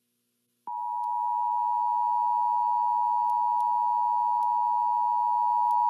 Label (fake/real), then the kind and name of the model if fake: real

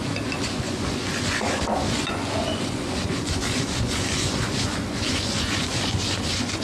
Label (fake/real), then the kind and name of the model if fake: fake, vocoder, Vocos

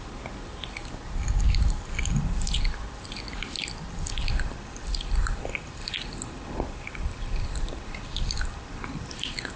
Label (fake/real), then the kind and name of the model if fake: real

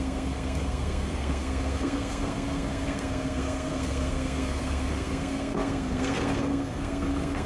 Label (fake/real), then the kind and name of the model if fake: fake, codec, SNAC